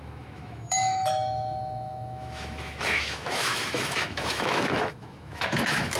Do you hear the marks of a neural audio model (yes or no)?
yes